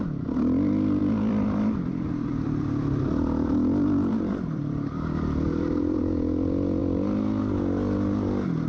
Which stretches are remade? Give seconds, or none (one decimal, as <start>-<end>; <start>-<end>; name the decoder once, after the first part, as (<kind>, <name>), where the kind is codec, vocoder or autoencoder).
1.0-6.0 (vocoder, BigVGAN v2)